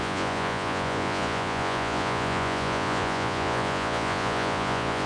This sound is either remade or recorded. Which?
remade